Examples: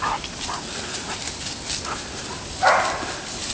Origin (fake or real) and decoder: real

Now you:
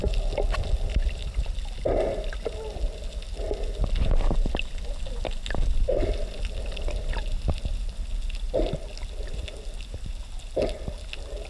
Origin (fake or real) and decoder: real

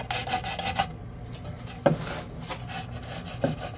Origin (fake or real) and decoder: real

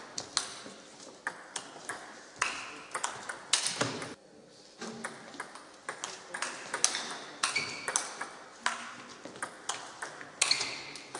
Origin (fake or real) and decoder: real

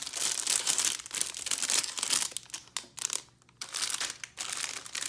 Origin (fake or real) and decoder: real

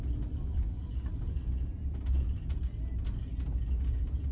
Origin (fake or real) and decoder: real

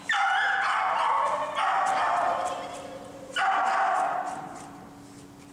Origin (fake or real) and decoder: real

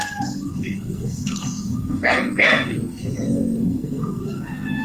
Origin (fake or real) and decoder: fake, codec, SNAC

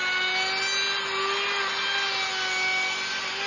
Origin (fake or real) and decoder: real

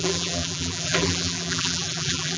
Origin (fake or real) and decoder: fake, vocoder, BigVGAN v2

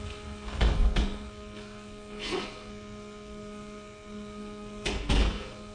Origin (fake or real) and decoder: fake, codec, SNAC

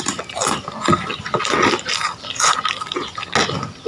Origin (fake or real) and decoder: real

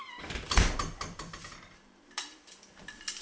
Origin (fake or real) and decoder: fake, vocoder, BigVGAN v2